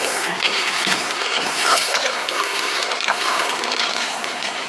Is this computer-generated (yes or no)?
yes